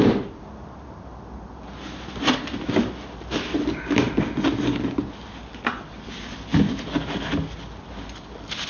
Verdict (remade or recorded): recorded